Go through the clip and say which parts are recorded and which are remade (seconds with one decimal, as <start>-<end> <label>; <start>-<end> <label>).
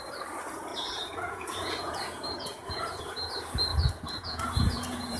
0.0-0.7 recorded; 0.7-3.3 remade; 3.3-3.7 recorded; 3.7-5.2 remade